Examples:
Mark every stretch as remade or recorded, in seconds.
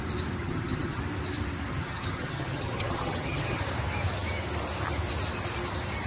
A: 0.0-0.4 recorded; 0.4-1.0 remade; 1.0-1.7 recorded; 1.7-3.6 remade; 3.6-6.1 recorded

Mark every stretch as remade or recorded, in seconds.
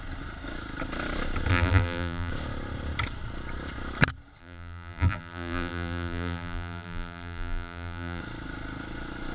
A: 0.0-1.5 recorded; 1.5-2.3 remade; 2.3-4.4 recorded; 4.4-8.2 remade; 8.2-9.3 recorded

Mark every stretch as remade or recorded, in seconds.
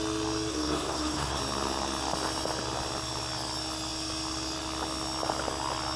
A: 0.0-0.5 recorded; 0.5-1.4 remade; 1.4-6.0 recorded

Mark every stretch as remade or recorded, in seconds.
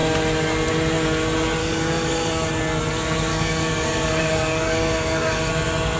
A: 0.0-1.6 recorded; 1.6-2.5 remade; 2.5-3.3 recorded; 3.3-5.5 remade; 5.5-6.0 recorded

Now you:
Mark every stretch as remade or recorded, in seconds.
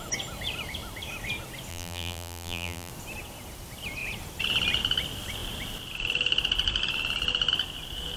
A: 0.0-1.7 recorded; 1.7-2.9 remade; 2.9-8.2 recorded